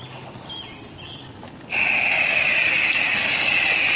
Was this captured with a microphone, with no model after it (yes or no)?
yes